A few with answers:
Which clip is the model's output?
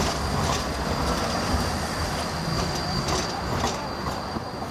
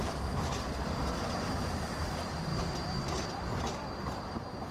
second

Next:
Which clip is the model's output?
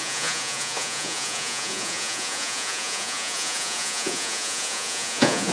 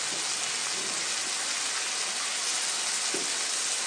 first